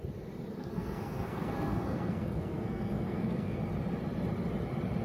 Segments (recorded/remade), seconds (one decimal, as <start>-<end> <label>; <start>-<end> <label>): 0.0-0.6 recorded; 0.6-3.6 remade; 3.6-5.0 recorded